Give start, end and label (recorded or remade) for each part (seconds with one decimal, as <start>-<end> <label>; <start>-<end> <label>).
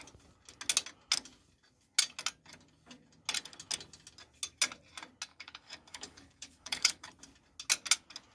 0.0-5.3 recorded; 5.3-7.1 remade; 7.1-8.3 recorded